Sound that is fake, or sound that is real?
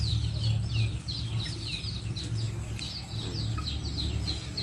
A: real